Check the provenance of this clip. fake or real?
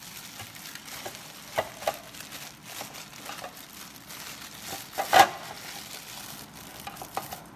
real